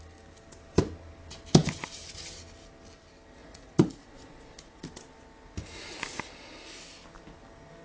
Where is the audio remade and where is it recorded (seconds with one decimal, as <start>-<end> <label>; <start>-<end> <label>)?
0.0-3.4 recorded; 3.4-4.8 remade; 4.8-7.8 recorded